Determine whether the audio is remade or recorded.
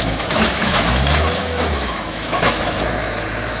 remade